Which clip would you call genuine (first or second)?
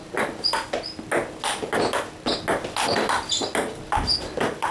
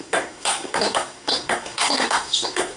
first